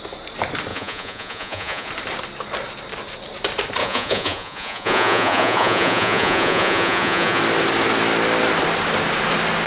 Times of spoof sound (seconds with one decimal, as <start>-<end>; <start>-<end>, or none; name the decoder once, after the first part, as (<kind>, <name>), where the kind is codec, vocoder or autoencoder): 0.7-1.9 (vocoder, Vocos); 3.8-7.4